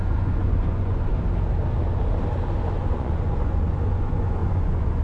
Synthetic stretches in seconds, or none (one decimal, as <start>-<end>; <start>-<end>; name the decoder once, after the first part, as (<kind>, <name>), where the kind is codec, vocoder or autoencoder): 0.0-1.1 (vocoder, Vocos); 2.8-5.0